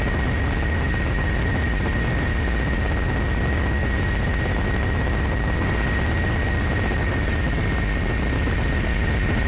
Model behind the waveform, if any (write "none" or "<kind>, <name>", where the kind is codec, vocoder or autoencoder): none